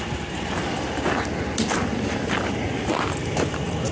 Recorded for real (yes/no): yes